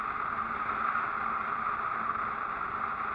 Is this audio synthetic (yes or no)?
no